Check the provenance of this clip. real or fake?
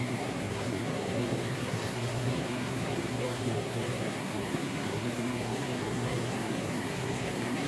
fake